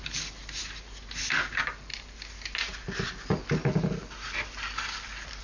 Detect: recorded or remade recorded